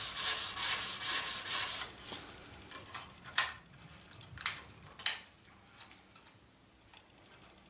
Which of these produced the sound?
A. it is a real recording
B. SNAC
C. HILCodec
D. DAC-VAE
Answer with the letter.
A